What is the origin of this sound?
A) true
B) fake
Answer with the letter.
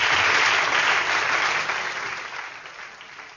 A